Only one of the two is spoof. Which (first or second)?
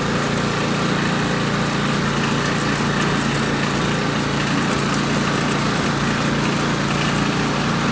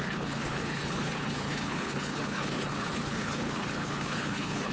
second